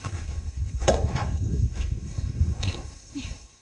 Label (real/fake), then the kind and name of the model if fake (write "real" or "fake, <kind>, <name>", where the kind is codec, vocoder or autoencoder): fake, codec, SNAC